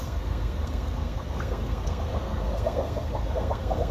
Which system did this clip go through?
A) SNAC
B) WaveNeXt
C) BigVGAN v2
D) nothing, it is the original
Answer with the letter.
A